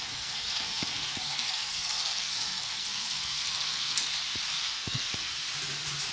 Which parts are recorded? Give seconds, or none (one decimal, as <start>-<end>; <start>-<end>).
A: 4.1-4.6; 5.3-6.1